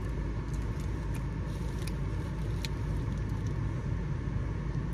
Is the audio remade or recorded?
recorded